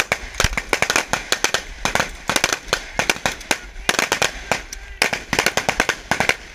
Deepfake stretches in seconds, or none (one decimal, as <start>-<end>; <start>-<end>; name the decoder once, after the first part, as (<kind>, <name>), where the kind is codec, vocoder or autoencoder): none